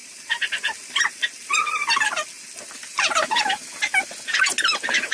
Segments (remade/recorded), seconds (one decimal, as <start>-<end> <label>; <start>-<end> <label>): 0.0-2.9 recorded; 2.9-3.7 remade; 3.7-5.1 recorded